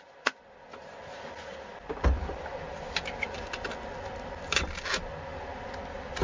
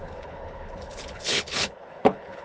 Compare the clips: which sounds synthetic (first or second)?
second